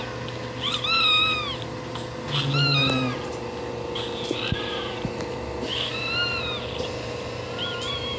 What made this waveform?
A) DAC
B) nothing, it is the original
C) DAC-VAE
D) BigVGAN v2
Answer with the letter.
B